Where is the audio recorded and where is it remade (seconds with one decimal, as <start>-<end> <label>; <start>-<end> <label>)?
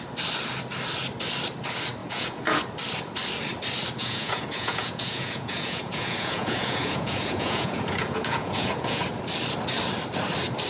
0.0-2.0 recorded; 2.0-2.6 remade; 2.6-4.0 recorded; 4.0-9.0 remade; 9.0-10.7 recorded